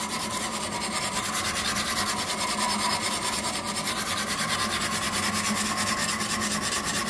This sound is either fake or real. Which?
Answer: real